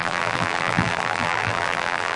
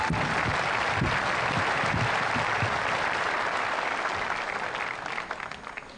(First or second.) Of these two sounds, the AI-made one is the first